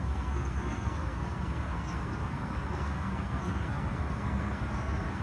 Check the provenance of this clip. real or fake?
fake